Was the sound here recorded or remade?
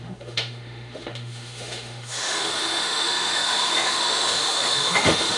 remade